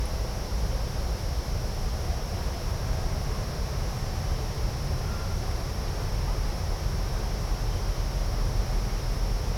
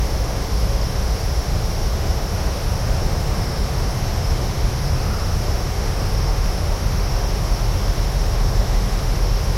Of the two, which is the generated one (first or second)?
second